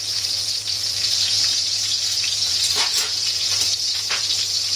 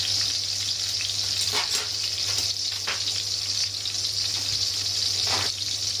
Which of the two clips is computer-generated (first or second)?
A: first